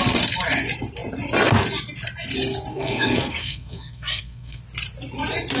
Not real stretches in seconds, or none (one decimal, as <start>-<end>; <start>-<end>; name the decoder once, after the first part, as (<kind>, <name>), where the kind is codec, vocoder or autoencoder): 2.7-4.6 (codec, SNAC)